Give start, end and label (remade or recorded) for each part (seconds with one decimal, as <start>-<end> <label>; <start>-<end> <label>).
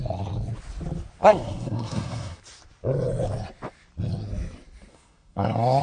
0.0-1.2 recorded; 1.2-2.4 remade; 2.4-4.9 recorded; 4.9-5.8 remade